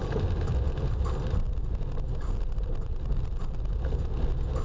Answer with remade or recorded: recorded